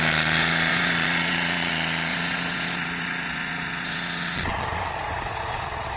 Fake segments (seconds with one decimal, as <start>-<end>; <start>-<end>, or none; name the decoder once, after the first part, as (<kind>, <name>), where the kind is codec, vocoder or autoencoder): 0.7-1.7 (vocoder, Vocos); 2.1-6.0